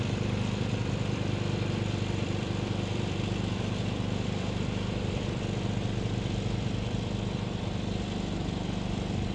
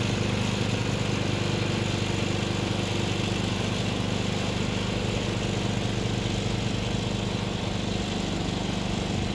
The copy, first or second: first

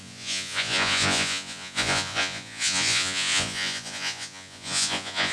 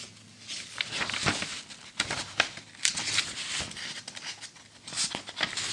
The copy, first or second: first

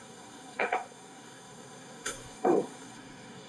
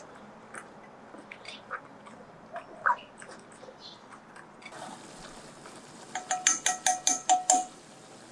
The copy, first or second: first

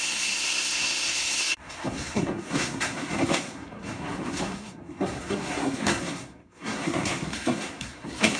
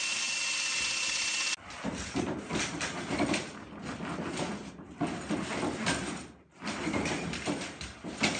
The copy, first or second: first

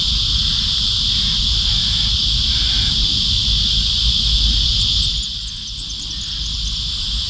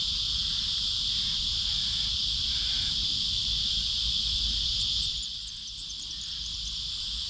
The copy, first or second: second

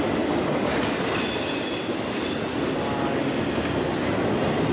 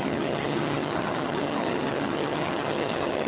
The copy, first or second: second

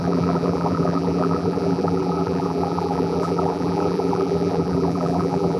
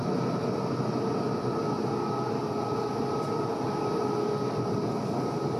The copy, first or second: first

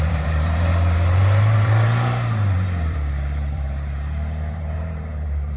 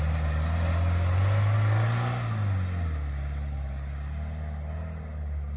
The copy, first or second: first